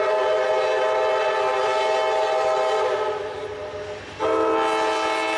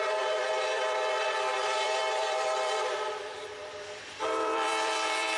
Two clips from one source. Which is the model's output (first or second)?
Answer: second